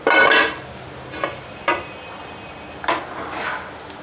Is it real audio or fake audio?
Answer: fake